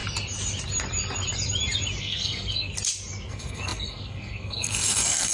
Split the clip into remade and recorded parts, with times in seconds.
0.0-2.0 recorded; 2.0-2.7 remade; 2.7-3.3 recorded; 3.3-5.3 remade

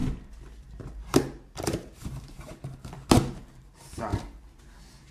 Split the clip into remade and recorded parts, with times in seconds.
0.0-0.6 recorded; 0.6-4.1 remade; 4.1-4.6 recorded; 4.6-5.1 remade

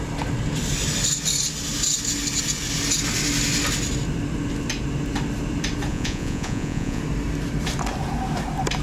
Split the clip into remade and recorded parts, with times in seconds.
0.0-5.9 recorded; 5.9-7.0 remade; 7.0-8.8 recorded

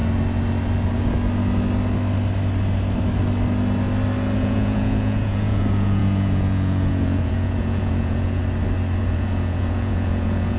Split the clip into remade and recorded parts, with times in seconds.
0.0-4.4 recorded; 4.4-8.4 remade; 8.4-9.0 recorded; 9.0-10.6 remade

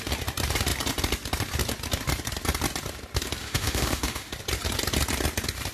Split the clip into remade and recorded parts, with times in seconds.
0.0-3.4 recorded; 3.4-4.3 remade; 4.3-5.7 recorded

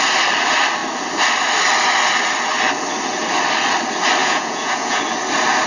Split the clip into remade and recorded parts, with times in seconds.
0.0-4.2 recorded; 4.2-5.0 remade; 5.0-5.7 recorded

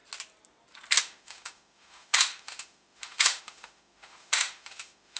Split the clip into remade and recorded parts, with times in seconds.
0.0-1.0 recorded; 1.0-5.2 remade